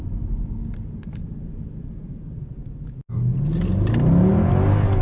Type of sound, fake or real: real